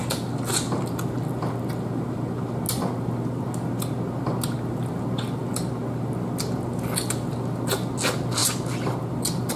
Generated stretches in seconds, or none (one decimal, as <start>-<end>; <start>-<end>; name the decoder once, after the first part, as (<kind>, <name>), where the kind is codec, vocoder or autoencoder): none